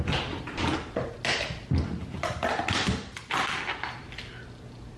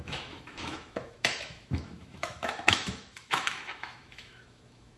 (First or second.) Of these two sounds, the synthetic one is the second